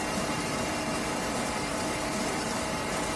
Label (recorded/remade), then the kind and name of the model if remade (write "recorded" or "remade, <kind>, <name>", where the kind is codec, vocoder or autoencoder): remade, vocoder, BigVGAN v2